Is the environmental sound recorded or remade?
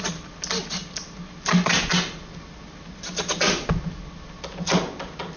recorded